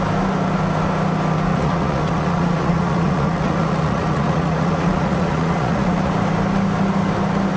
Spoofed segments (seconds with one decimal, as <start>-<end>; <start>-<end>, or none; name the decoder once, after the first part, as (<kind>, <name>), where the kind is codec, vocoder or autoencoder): 1.5-6.1 (vocoder, Vocos)